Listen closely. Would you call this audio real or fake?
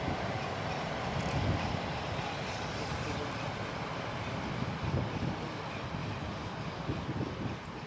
real